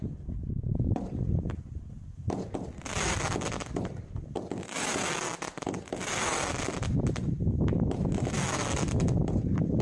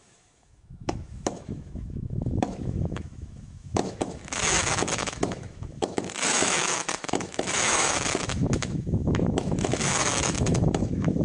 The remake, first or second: second